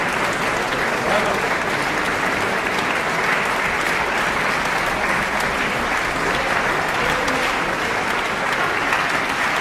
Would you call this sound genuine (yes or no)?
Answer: yes